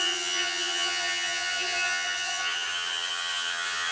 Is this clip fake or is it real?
fake